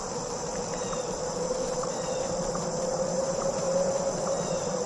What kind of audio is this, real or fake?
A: fake